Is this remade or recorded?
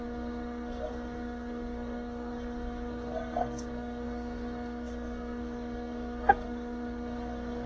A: remade